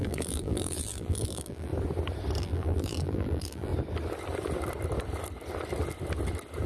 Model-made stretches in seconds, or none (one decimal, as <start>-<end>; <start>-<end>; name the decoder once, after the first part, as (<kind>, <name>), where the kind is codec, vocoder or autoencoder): 0.0-1.7 (vocoder, BigVGAN v2); 2.4-3.7